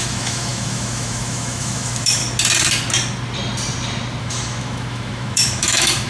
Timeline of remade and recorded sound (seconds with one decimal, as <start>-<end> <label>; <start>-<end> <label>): 0.0-2.2 remade; 2.2-4.2 recorded; 4.2-6.1 remade